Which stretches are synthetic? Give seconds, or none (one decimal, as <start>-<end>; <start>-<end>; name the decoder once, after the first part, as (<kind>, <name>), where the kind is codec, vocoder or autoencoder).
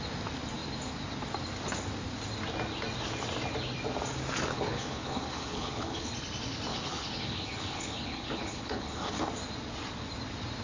4.5-6.1 (codec, HILCodec); 6.7-9.3